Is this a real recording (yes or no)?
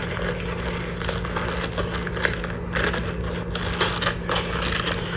yes